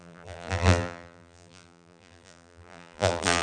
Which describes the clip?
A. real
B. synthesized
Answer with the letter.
B